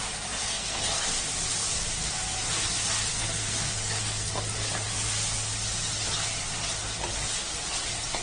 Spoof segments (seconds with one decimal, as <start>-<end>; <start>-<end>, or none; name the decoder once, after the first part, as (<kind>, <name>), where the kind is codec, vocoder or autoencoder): 0.4-1.2 (codec, SNAC); 3.1-4.3